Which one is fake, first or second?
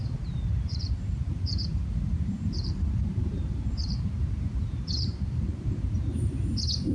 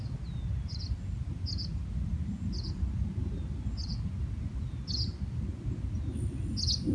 first